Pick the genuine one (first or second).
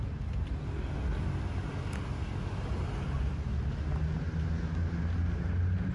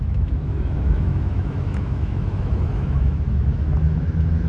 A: first